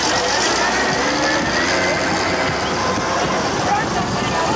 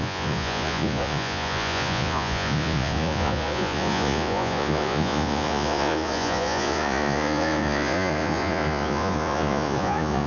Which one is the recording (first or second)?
first